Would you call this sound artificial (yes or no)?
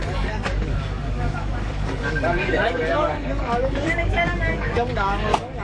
yes